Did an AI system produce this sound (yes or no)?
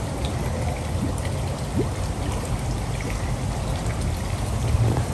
no